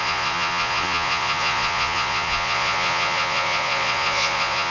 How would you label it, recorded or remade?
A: remade